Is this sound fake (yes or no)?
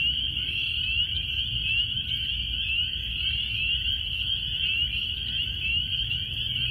no